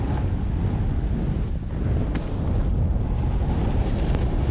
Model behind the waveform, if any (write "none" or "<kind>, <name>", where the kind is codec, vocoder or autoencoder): none